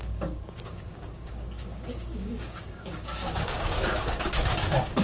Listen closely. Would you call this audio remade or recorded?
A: remade